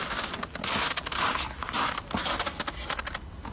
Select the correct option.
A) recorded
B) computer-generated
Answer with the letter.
A